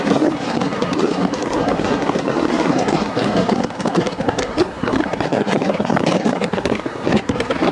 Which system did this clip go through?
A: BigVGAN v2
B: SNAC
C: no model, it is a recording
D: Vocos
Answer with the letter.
B